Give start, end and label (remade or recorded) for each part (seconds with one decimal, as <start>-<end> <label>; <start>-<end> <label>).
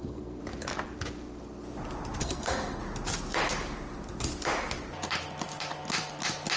0.0-0.4 remade; 0.4-2.2 recorded; 2.2-2.8 remade; 2.8-6.6 recorded